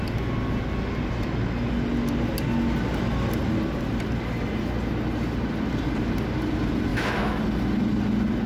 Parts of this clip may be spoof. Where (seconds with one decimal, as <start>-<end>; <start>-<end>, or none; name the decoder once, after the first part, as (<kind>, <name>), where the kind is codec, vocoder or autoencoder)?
6.9-7.4 (autoencoder, DAC-VAE)